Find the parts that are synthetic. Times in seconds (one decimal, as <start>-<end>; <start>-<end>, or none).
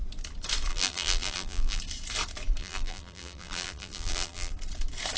0.7-1.8; 2.6-4.5